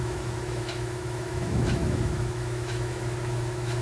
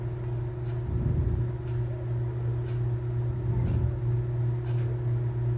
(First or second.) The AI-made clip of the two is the first